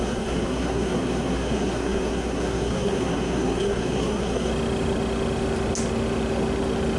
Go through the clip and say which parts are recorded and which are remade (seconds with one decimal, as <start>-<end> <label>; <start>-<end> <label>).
0.0-4.5 remade; 4.5-7.0 recorded